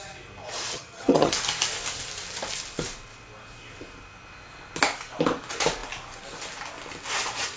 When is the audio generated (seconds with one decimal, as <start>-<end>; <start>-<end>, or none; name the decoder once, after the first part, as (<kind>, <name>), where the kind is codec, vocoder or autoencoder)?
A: 0.7-1.3 (vocoder, HiFi-GAN)